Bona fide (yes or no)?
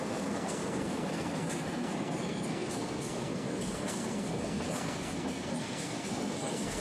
no